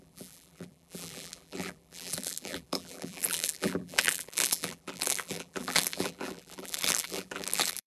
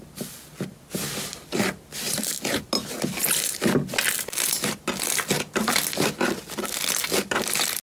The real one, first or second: second